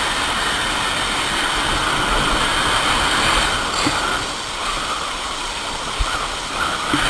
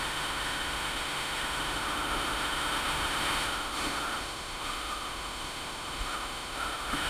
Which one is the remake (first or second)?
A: second